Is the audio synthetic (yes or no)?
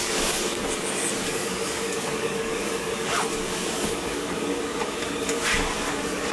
yes